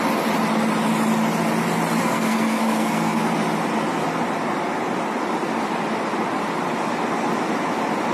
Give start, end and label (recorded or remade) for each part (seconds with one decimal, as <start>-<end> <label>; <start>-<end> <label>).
0.0-2.0 recorded; 2.0-3.2 remade; 3.2-8.1 recorded